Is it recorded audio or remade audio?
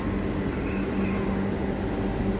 recorded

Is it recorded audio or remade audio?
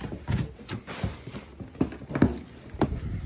recorded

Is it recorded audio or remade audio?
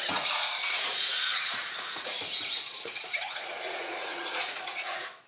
remade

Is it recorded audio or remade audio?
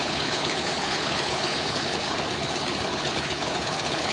remade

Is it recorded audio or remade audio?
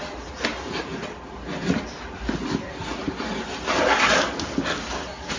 recorded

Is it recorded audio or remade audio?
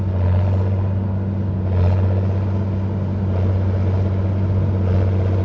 recorded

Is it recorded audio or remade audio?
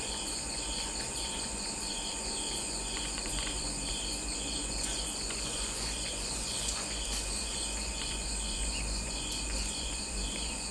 remade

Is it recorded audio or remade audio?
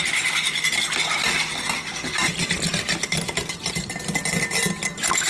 recorded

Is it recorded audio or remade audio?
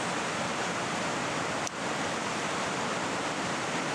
recorded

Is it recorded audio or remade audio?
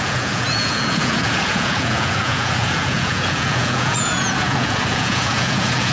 remade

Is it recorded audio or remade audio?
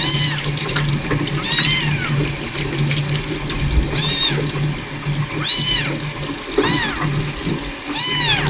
recorded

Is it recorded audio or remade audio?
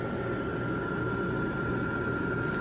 recorded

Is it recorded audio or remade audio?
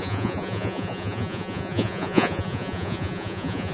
remade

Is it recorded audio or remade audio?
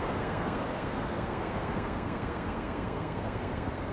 remade